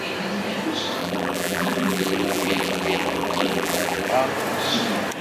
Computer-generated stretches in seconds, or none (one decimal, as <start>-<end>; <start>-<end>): 1.0-4.1